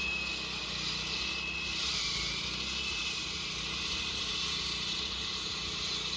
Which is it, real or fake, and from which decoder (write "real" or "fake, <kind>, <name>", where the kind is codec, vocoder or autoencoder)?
real